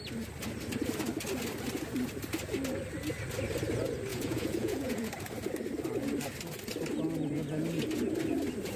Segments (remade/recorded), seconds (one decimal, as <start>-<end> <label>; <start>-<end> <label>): 0.0-4.1 recorded; 4.1-5.1 remade; 5.1-8.8 recorded